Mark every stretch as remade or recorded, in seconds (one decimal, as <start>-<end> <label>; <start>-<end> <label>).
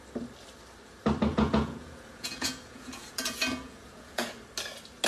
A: 0.0-1.3 recorded; 1.3-4.3 remade; 4.3-5.1 recorded